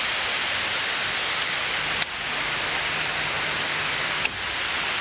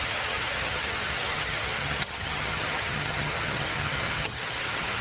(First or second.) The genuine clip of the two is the first